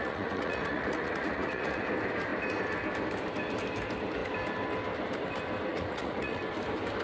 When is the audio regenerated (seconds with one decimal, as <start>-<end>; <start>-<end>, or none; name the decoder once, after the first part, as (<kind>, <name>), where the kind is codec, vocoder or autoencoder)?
0.0-1.8 (vocoder, Vocos); 5.7-6.4